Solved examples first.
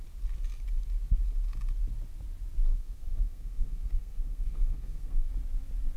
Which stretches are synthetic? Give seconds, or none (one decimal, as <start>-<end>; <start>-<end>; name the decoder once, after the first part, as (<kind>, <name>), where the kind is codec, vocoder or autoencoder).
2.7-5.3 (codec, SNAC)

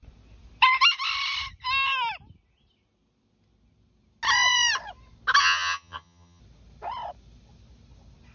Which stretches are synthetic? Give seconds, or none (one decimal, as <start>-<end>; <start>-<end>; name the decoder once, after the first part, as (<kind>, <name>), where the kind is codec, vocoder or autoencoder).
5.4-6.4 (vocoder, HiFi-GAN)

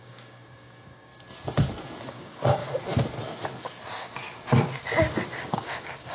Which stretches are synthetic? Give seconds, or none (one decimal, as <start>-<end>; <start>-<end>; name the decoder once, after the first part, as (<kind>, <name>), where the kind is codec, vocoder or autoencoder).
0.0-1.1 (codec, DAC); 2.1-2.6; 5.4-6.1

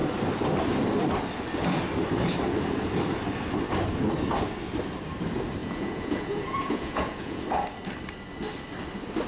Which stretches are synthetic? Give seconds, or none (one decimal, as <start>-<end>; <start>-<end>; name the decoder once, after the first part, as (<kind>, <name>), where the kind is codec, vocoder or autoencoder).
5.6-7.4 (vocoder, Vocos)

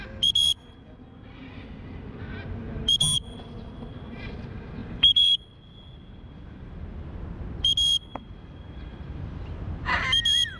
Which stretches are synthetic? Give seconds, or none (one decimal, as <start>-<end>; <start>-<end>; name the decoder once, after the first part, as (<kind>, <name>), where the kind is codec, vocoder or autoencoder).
4.8-5.4 (vocoder, BigVGAN v2); 8.1-9.9

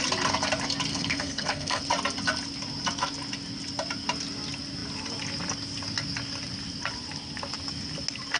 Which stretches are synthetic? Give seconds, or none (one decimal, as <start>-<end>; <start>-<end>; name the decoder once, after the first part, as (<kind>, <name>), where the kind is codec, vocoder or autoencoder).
0.9-1.8 (codec, SNAC)